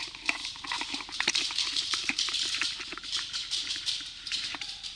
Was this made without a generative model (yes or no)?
no